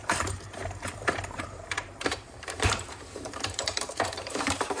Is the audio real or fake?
fake